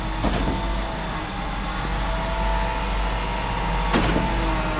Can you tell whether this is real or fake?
real